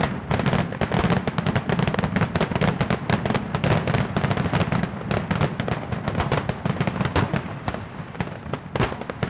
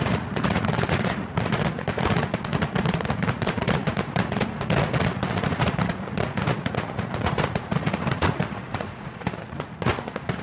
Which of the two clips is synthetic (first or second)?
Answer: second